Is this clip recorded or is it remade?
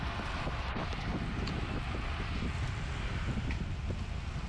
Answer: recorded